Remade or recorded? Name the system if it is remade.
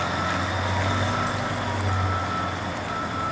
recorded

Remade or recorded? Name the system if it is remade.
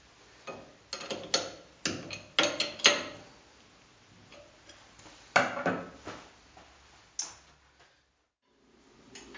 recorded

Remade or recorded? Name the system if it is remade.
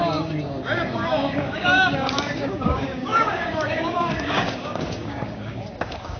remade, codec, DAC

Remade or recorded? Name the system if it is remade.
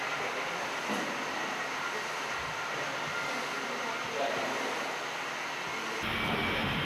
recorded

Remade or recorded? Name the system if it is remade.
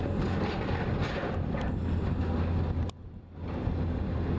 recorded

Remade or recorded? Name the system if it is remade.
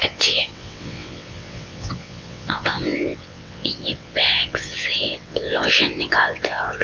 remade, vocoder, WaveNeXt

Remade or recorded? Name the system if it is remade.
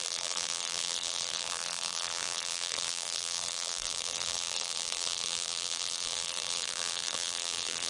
remade, vocoder, BigVGAN v2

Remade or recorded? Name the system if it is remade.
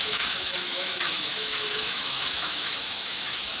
remade, autoencoder, DAC-VAE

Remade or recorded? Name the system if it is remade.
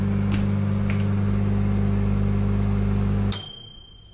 recorded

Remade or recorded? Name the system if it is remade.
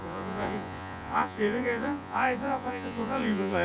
remade, vocoder, Vocos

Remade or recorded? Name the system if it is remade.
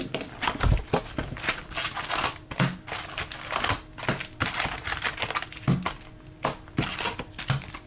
recorded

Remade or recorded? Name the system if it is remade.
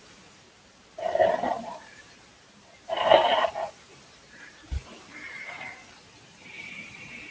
remade, vocoder, BigVGAN v2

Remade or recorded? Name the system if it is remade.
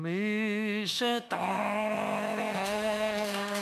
remade, autoencoder, DAC-VAE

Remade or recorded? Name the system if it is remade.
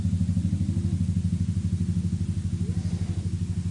recorded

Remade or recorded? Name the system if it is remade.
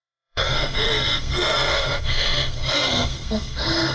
remade, codec, SNAC